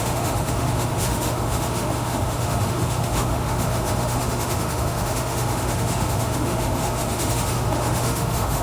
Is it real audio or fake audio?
fake